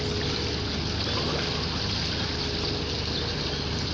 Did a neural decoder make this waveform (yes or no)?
no